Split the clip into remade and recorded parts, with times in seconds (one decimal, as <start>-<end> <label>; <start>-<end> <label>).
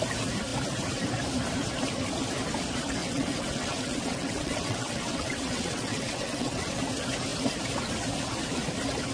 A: 0.0-3.0 recorded; 3.0-6.8 remade; 6.8-9.1 recorded